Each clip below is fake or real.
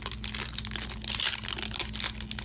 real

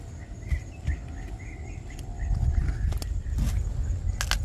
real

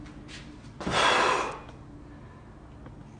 real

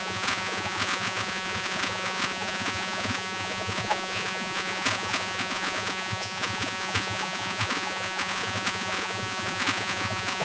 fake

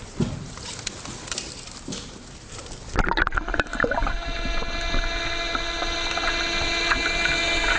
real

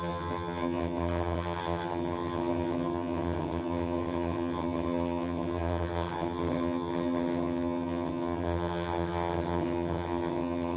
fake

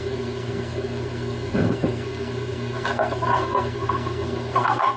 fake